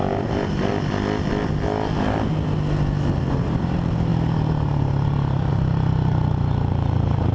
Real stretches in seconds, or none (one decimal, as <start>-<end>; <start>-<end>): 0.7-3.2